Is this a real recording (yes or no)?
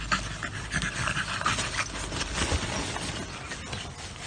yes